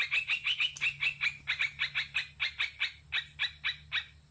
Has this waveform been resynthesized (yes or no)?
no